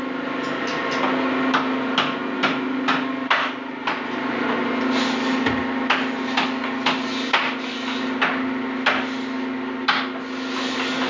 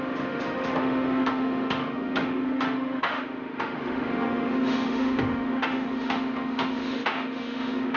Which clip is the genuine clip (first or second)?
first